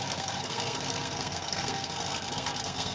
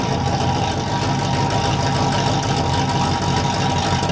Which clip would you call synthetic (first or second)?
first